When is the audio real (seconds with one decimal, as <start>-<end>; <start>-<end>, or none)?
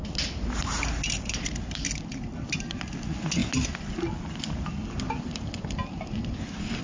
0.0-6.8